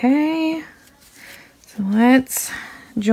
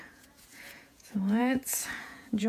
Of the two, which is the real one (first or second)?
first